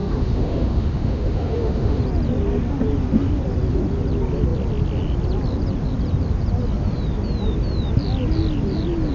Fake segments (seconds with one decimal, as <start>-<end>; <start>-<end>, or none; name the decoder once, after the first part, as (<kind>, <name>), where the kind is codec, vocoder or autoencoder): 0.0-2.0 (autoencoder, DAC-VAE)